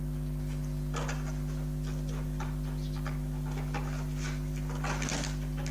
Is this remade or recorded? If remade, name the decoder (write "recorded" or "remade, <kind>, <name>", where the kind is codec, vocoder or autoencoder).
recorded